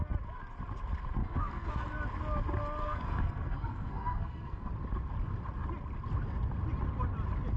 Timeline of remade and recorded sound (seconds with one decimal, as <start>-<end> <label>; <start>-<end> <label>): 0.0-1.2 recorded; 1.2-1.7 remade; 1.7-2.8 recorded; 2.8-4.7 remade; 4.7-7.6 recorded